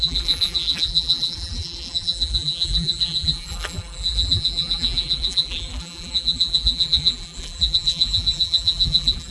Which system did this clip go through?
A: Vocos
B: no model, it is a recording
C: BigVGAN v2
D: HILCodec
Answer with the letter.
C